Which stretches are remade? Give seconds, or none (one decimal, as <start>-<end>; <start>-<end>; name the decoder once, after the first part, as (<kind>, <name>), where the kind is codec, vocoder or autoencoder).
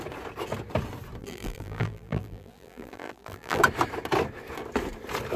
1.2-3.6 (vocoder, BigVGAN v2)